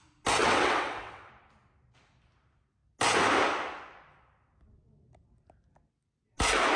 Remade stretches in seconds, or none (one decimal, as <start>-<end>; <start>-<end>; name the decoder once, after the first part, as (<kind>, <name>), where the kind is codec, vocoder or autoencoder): 0.4-1.3 (vocoder, WaveNeXt)